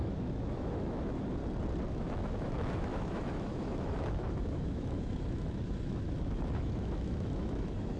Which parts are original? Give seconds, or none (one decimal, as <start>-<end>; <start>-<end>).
1.4-1.9

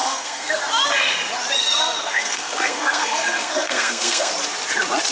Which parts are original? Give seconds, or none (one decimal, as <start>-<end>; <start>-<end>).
0.6-1.6; 4.3-5.1

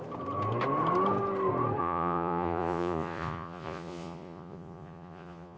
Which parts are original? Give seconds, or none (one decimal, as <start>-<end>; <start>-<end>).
0.0-1.8

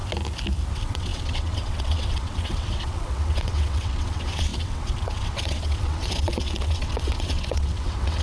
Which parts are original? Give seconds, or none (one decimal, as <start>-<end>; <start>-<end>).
0.0-0.7

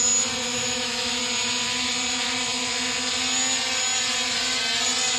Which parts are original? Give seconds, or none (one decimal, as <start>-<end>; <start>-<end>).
0.0-0.5; 1.2-5.2

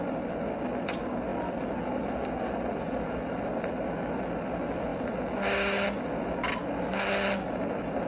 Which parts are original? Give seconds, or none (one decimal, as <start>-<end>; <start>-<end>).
0.0-8.1

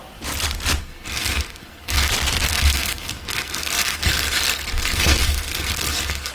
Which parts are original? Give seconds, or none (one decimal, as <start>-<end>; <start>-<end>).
0.0-0.8; 2.1-2.5